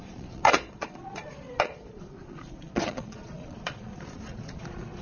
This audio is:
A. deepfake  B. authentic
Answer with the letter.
A